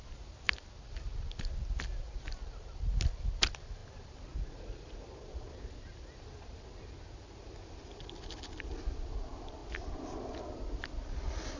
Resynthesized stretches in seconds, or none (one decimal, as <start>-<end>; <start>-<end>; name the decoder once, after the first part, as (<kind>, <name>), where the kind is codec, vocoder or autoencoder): none